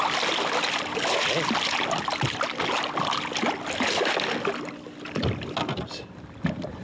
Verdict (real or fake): real